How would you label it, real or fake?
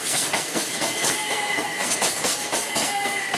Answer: fake